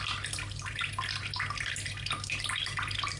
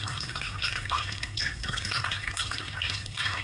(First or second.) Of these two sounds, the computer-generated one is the second